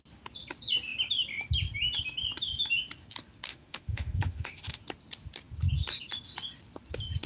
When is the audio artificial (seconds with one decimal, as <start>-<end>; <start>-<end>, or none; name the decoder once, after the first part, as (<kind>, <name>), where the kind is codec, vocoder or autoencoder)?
3.5-4.8 (autoencoder, DAC-VAE)